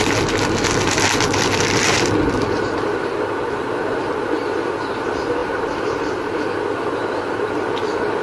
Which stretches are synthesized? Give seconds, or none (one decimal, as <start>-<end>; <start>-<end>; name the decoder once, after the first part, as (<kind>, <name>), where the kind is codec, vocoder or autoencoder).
5.4-6.4 (vocoder, BigVGAN v2)